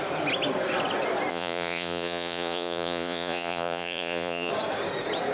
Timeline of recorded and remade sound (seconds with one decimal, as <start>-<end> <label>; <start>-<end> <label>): 0.0-1.3 recorded; 1.3-4.5 remade; 4.5-5.3 recorded